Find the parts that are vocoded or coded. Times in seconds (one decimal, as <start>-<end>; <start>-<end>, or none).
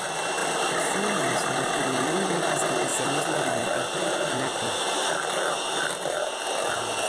0.4-2.5; 2.9-6.1